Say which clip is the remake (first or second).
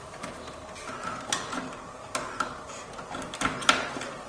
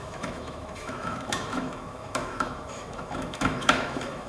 second